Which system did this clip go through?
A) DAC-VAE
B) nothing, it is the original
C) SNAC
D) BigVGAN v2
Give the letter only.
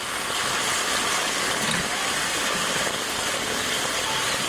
B